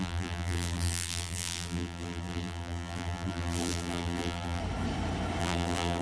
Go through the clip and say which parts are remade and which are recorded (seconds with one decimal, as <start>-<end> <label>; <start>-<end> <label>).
0.0-4.6 remade; 4.6-5.4 recorded; 5.4-6.0 remade